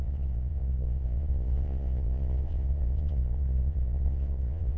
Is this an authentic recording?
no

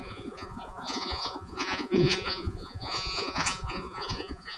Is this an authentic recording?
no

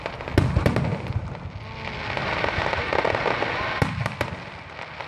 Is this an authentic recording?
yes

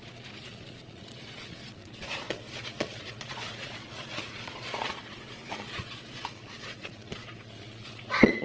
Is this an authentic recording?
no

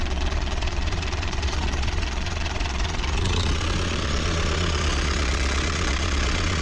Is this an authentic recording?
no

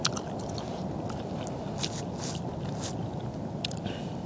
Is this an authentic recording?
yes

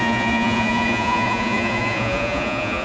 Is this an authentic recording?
no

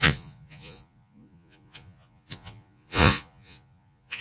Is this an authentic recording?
no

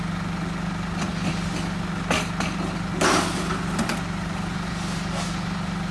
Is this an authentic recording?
yes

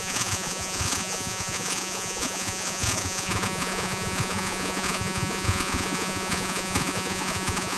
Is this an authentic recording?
no